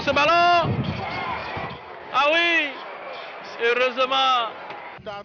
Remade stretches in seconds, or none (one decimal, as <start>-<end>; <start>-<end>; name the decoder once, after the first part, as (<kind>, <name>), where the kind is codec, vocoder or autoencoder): none